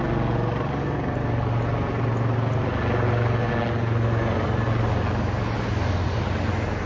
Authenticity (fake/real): real